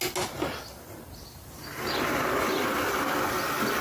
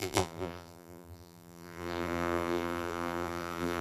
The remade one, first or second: second